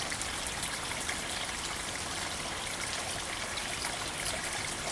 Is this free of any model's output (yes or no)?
yes